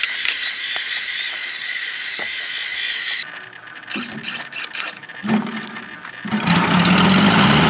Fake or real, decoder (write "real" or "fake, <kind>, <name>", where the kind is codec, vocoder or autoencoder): real